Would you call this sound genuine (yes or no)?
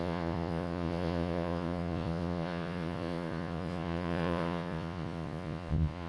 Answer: no